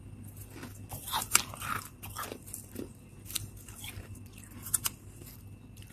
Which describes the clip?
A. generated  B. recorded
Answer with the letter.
B